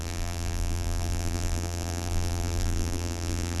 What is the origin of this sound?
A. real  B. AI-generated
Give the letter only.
B